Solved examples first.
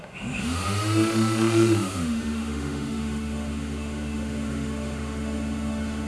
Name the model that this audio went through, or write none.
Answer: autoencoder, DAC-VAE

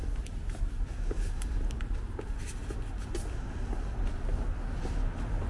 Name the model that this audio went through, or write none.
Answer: none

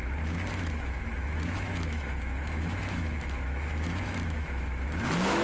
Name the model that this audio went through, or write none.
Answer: autoencoder, DAC-VAE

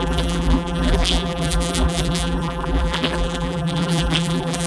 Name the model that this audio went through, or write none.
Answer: vocoder, BigVGAN v2